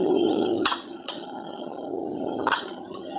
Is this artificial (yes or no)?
yes